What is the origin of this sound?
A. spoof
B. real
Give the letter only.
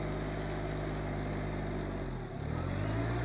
B